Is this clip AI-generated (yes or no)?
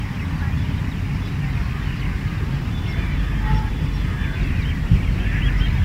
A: no